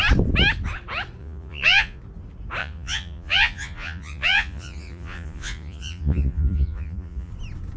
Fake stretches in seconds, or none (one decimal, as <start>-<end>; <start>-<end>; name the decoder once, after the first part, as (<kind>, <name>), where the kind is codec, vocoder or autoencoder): 1.2-2.0 (vocoder, Vocos); 2.6-7.3